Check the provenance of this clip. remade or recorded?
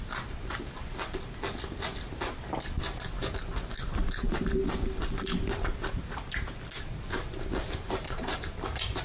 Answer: recorded